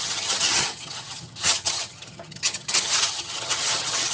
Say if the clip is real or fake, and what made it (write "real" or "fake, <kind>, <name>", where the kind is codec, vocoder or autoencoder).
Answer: fake, vocoder, HiFi-GAN